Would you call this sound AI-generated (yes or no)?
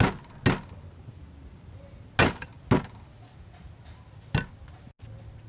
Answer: no